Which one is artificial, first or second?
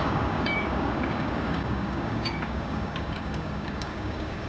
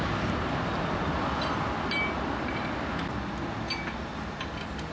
first